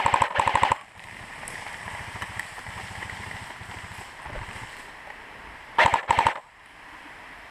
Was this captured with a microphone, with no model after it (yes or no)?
yes